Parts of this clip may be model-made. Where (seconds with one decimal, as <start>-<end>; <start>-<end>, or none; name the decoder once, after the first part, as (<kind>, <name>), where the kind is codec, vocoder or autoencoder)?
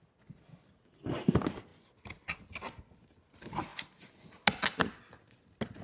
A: none